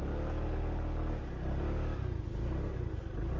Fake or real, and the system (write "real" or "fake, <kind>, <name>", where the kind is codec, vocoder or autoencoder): real